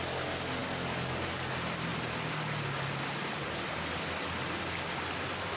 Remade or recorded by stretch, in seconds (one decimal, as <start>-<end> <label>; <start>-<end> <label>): 0.0-0.6 recorded; 0.6-1.5 remade; 1.5-5.6 recorded